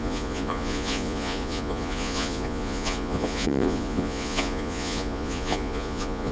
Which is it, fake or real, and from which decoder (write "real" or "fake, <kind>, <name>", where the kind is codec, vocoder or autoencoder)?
fake, vocoder, Vocos